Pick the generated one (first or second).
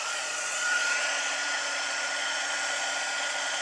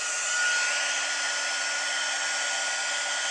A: first